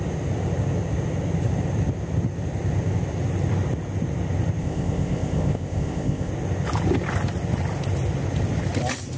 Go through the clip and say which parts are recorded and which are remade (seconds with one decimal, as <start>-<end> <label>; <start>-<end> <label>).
0.0-4.6 recorded; 4.6-6.3 remade; 6.3-9.2 recorded